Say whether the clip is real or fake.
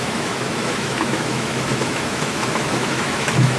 fake